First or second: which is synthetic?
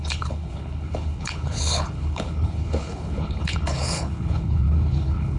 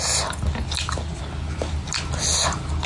first